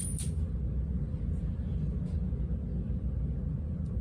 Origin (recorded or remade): recorded